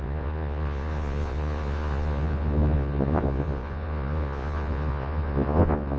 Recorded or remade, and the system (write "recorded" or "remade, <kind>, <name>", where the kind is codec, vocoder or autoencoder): remade, vocoder, Vocos